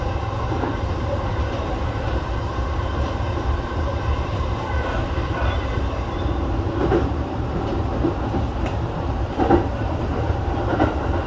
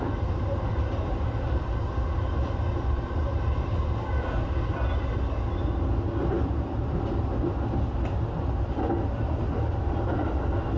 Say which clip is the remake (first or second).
first